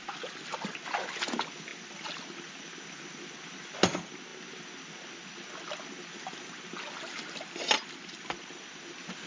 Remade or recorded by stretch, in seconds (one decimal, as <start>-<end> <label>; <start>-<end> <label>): 0.0-9.3 recorded